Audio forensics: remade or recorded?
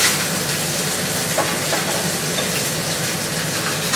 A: recorded